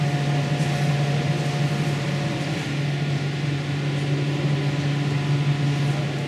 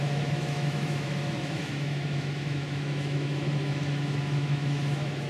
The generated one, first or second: second